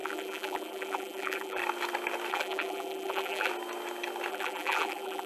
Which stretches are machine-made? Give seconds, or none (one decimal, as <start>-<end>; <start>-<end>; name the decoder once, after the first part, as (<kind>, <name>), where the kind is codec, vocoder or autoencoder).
0.0-1.6 (vocoder, BigVGAN v2); 2.3-3.5; 4.3-5.3